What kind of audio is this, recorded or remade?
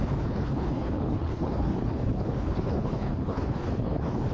remade